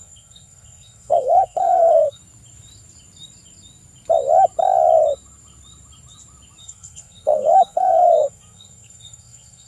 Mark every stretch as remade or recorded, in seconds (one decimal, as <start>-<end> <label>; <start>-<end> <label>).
0.0-2.2 remade; 2.2-6.6 recorded; 6.6-9.7 remade